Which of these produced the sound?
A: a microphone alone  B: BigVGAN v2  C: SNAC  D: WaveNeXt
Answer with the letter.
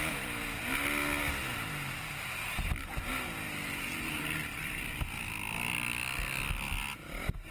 A